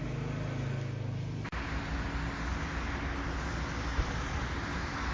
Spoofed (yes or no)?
no